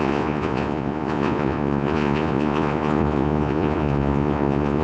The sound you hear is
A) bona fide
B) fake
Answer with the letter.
B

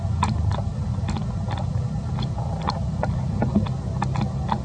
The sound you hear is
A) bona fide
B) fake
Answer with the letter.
B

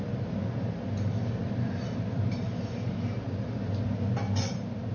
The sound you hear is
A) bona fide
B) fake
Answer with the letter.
A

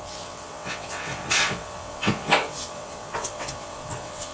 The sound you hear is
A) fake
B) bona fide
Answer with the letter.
A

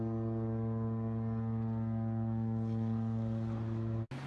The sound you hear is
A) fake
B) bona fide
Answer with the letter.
B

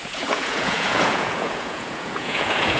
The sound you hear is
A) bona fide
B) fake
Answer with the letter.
B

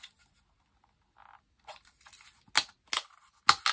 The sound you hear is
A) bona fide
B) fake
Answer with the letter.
A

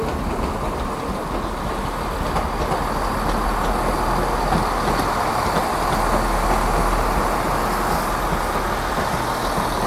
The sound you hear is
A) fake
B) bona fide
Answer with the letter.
B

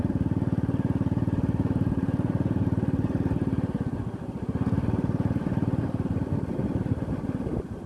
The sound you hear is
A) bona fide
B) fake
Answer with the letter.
A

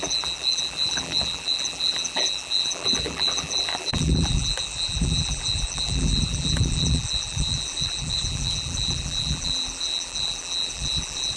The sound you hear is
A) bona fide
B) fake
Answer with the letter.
B